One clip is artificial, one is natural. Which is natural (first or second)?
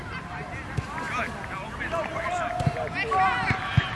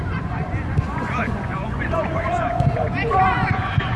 first